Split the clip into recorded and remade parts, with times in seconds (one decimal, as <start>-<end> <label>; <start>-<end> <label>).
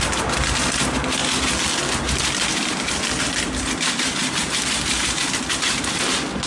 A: 0.0-2.5 recorded; 2.5-3.6 remade; 3.6-4.2 recorded; 4.2-5.3 remade; 5.3-6.5 recorded